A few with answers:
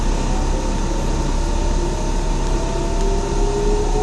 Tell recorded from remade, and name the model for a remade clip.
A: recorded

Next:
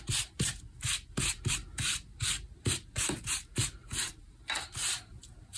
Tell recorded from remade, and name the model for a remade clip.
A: remade, vocoder, BigVGAN v2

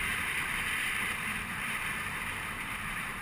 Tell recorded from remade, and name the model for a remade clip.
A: remade, vocoder, BigVGAN v2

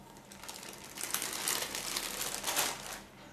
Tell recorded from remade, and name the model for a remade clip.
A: recorded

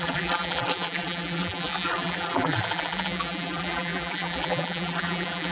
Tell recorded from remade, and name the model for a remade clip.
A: remade, vocoder, BigVGAN v2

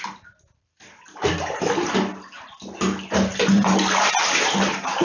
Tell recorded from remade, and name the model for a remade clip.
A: remade, vocoder, BigVGAN v2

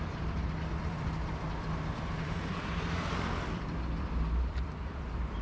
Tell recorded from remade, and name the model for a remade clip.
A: remade, vocoder, BigVGAN v2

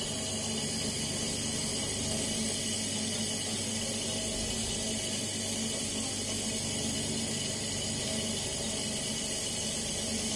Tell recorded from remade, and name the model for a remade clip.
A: recorded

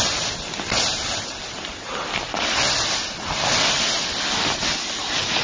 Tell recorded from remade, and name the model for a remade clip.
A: recorded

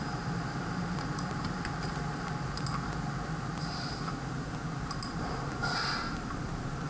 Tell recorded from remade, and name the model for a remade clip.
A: remade, vocoder, BigVGAN v2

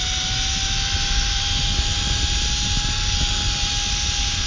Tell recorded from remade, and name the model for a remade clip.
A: recorded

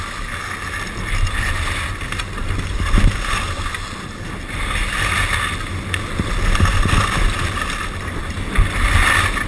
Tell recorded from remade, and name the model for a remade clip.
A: recorded